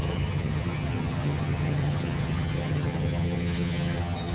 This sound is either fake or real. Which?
fake